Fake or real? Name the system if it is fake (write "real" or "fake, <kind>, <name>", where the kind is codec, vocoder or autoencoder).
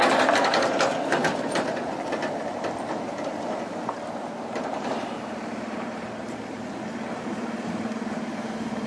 fake, vocoder, BigVGAN v2